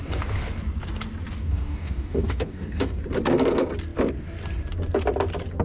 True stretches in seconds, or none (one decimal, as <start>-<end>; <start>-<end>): 0.0-1.4; 3.0-5.6